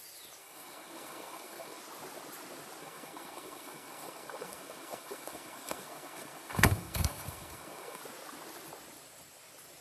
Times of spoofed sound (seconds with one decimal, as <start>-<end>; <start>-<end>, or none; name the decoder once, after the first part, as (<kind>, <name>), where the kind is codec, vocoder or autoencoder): 0.4-1.8 (codec, SNAC); 2.8-8.0

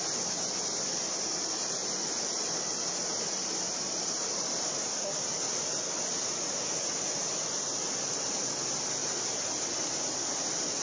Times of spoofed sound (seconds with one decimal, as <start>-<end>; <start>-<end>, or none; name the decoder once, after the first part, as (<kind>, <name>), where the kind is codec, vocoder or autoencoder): 3.1-4.6 (vocoder, BigVGAN v2)

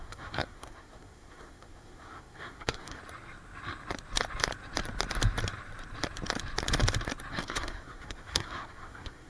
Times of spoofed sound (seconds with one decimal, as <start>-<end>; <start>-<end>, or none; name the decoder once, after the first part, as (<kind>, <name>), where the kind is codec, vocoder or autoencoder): 0.0-3.0 (codec, SNAC); 7.3-9.3